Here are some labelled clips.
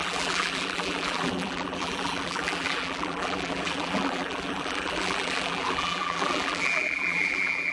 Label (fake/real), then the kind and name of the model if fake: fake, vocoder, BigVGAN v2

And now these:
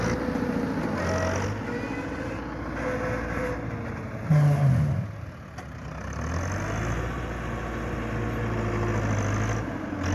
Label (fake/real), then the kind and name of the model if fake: real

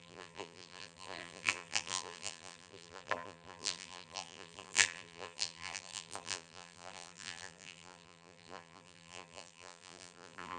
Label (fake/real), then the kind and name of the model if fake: fake, vocoder, BigVGAN v2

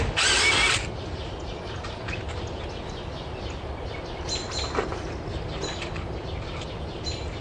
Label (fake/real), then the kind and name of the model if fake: real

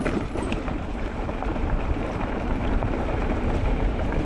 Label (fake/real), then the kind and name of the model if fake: fake, vocoder, BigVGAN v2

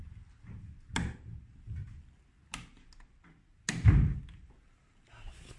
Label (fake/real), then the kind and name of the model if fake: real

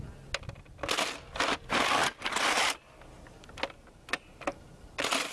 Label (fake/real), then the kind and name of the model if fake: real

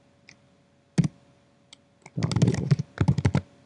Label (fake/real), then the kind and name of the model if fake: real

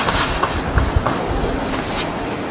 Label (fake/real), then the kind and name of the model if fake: real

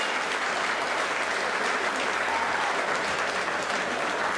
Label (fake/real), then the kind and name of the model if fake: real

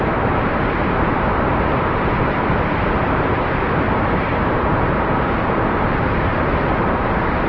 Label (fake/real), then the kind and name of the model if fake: fake, vocoder, BigVGAN v2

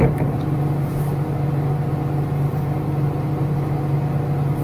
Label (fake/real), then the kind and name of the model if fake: real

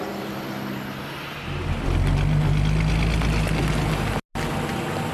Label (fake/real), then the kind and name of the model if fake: real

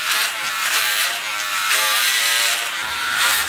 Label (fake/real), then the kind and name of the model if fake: fake, vocoder, BigVGAN v2